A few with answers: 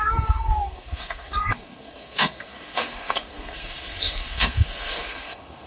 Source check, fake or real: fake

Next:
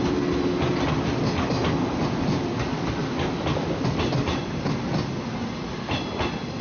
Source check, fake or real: real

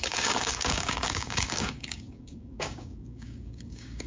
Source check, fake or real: fake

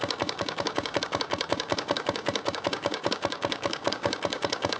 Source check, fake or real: fake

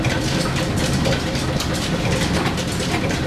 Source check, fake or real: real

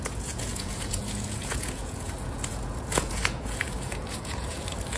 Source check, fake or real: fake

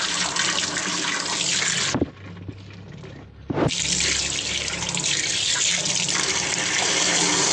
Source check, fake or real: real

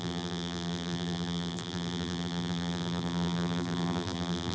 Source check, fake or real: fake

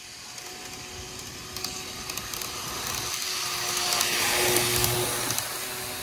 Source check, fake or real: real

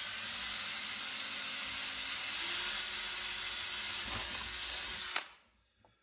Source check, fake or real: real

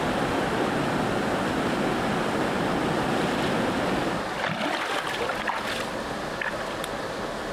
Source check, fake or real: real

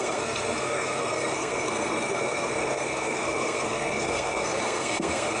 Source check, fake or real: fake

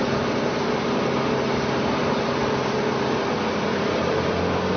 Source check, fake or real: real